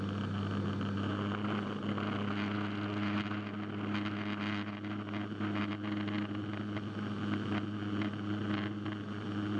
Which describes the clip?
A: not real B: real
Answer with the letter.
B